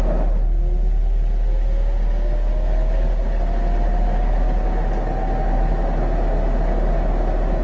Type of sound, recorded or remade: recorded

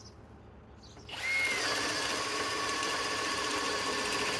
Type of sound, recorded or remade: recorded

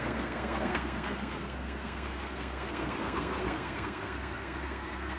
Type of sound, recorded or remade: remade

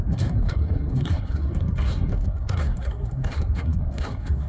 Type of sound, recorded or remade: remade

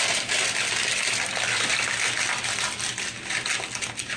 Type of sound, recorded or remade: recorded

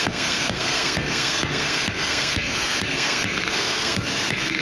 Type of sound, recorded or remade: remade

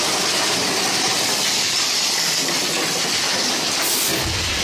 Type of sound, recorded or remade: recorded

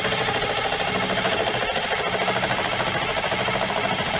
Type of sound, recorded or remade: recorded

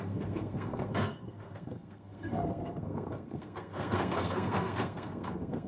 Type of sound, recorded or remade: remade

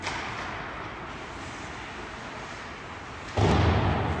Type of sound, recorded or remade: recorded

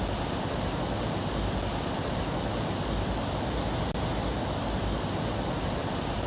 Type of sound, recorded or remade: recorded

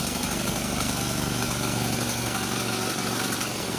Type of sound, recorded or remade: remade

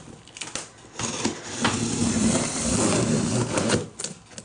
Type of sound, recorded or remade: recorded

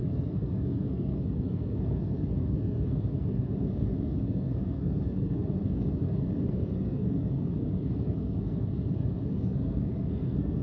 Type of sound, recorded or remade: remade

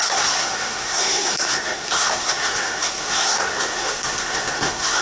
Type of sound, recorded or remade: remade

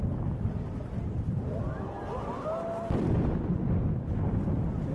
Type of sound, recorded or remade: recorded